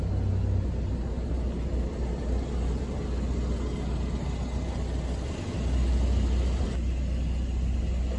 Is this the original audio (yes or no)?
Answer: yes